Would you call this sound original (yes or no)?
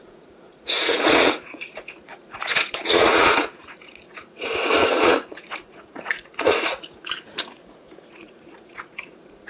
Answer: no